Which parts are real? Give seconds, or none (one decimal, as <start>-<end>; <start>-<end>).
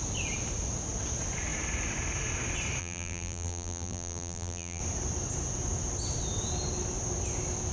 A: 0.0-2.8; 4.8-7.7